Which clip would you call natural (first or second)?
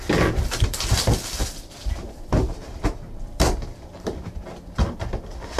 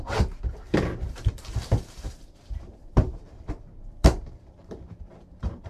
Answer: first